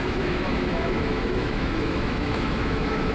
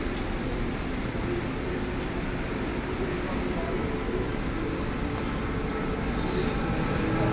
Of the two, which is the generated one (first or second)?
first